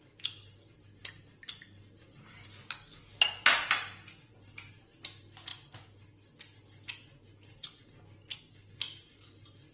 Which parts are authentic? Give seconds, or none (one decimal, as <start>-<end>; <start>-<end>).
0.0-9.7

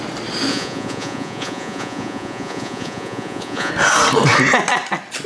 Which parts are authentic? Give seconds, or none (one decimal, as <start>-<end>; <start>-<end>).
0.0-0.5; 3.7-5.3

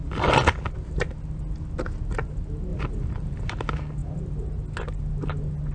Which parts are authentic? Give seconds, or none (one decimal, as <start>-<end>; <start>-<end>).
0.0-2.7; 3.5-5.7

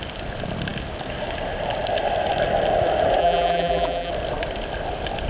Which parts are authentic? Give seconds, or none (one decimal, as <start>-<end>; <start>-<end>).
0.0-3.2; 4.1-5.3

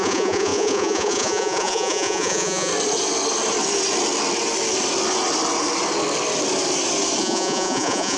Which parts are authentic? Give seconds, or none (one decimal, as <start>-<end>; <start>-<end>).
2.7-7.2